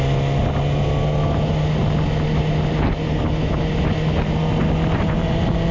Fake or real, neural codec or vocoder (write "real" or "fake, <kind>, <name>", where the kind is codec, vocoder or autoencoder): real